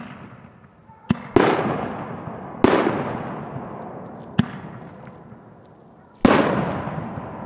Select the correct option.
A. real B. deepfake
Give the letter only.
A